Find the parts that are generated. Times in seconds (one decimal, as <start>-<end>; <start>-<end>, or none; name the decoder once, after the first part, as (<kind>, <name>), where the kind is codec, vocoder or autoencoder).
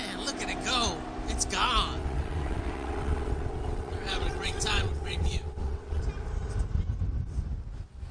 2.0-6.0 (vocoder, WaveNeXt)